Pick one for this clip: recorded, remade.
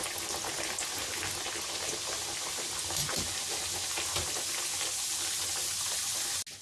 recorded